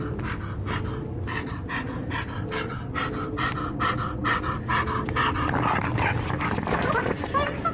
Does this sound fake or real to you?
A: real